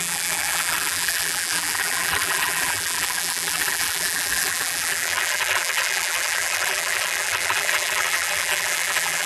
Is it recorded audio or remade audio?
remade